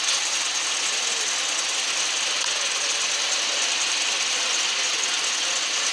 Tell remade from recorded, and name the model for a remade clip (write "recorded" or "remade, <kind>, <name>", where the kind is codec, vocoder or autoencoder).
recorded